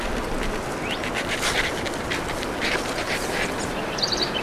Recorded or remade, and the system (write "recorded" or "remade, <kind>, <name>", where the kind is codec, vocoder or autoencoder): recorded